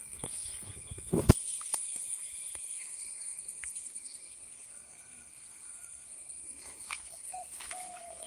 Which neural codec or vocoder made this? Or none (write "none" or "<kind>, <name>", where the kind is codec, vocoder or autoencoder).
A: codec, SNAC